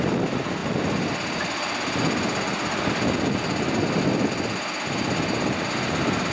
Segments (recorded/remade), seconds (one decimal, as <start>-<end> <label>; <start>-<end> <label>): 0.0-6.3 recorded